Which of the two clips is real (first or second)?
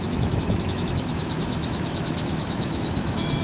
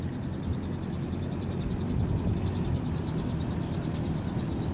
second